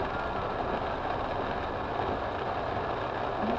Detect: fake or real real